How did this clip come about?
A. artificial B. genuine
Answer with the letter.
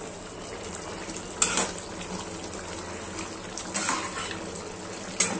B